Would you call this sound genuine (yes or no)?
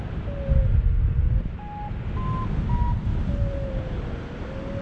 yes